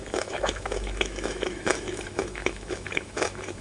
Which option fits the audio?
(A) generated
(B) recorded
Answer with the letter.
A